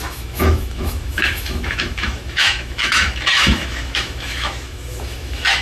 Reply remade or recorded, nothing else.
remade